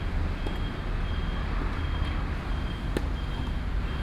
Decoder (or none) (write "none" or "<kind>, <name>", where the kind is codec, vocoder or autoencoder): none